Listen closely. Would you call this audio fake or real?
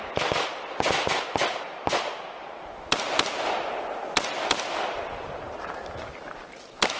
real